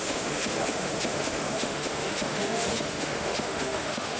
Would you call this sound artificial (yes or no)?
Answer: yes